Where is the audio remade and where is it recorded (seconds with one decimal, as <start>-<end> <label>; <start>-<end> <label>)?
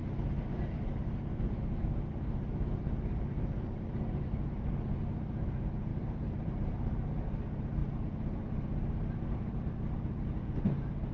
0.0-0.5 recorded; 0.5-11.1 remade